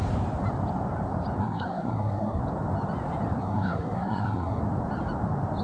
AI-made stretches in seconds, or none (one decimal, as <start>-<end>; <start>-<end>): 1.4-2.4; 3.4-4.6